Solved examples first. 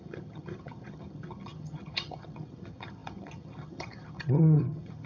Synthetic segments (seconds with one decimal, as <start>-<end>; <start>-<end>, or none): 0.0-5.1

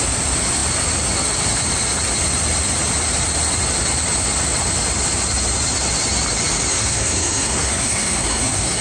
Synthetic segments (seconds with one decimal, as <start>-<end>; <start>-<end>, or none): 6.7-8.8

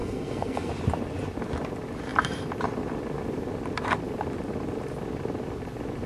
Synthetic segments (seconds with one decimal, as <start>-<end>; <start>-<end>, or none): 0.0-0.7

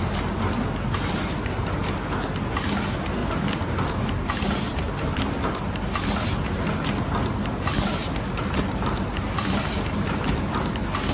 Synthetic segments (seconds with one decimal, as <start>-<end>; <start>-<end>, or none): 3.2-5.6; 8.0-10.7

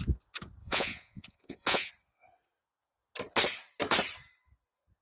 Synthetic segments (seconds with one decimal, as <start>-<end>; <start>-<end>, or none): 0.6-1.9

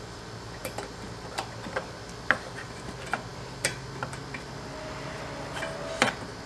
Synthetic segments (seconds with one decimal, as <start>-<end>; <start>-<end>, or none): 0.0-6.5

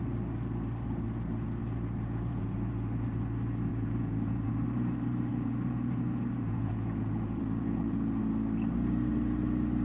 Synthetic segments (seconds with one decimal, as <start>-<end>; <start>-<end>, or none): 1.6-3.2; 3.7-4.5; 5.3-8.2

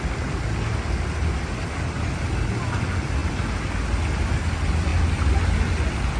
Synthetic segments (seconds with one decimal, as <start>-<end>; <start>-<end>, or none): none